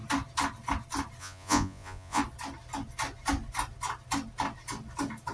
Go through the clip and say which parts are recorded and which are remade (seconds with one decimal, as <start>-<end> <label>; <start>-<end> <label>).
0.0-1.2 recorded; 1.2-2.2 remade; 2.2-5.3 recorded

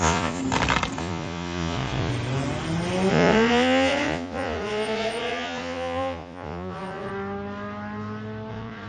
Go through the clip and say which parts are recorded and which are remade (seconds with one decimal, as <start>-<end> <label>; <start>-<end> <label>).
0.0-0.4 remade; 0.4-1.0 recorded; 1.0-2.1 remade; 2.1-3.1 recorded; 3.1-7.1 remade; 7.1-8.5 recorded; 8.5-8.9 remade

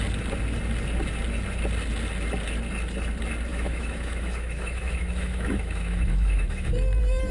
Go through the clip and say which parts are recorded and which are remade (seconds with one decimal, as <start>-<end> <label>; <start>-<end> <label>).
0.0-3.5 recorded; 3.5-6.7 remade; 6.7-7.3 recorded

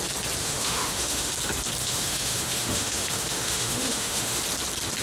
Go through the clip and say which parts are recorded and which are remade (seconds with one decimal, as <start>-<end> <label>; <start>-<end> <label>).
0.0-0.4 recorded; 0.4-1.3 remade; 1.3-1.8 recorded; 1.8-4.4 remade; 4.4-5.0 recorded

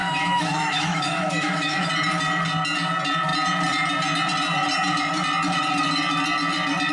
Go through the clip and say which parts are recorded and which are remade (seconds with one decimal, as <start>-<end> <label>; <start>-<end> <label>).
0.0-1.9 remade; 1.9-6.9 recorded

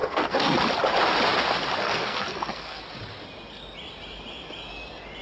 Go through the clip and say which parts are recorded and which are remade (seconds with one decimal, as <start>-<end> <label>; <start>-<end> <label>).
0.0-0.6 remade; 0.6-1.8 recorded; 1.8-2.8 remade; 2.8-5.2 recorded

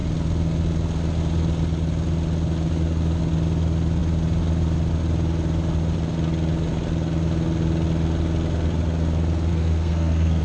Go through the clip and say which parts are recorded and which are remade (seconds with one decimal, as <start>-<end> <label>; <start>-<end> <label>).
0.0-9.5 recorded; 9.5-10.4 remade